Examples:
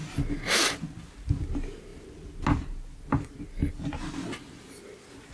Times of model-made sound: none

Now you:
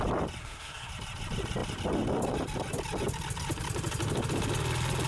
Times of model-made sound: 0.4-0.9 (codec, SNAC)

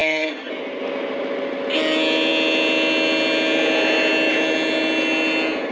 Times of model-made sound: 0.0-0.5 (codec, SNAC)